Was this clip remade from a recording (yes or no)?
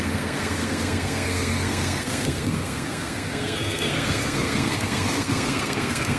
yes